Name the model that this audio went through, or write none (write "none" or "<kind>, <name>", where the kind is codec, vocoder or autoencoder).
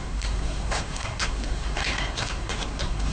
codec, SNAC